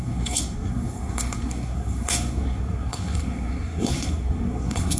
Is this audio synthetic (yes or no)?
yes